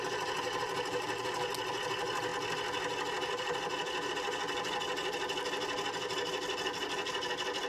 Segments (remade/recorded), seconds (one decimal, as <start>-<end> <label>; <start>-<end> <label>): 0.0-7.7 recorded

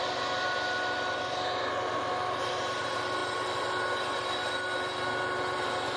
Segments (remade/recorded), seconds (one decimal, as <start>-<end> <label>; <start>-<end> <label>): 0.0-6.0 recorded

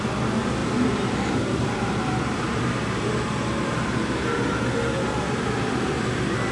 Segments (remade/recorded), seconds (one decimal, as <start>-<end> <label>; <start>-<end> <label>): 0.0-0.6 recorded; 0.6-3.1 remade; 3.1-6.5 recorded

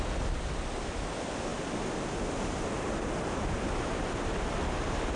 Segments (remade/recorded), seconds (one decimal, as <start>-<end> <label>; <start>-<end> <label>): 0.0-5.2 recorded

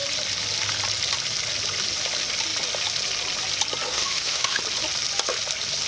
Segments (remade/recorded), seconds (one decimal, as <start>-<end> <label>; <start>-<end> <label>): 0.0-3.9 recorded; 3.9-4.6 remade; 4.6-5.9 recorded

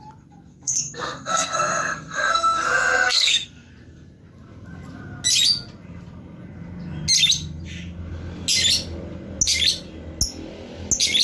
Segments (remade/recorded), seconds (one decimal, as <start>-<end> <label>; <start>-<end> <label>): 0.0-0.5 recorded; 0.5-3.7 remade; 3.7-11.2 recorded

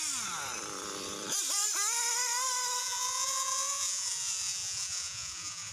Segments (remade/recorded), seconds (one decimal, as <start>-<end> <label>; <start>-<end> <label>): 0.0-2.8 recorded; 2.8-5.7 remade